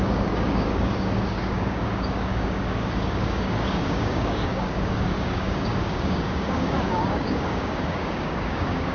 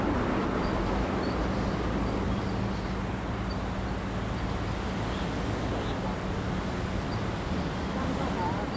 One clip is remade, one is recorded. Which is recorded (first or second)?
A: second